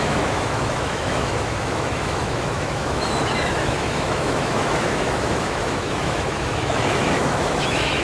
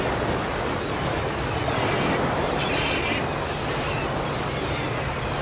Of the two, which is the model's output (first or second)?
first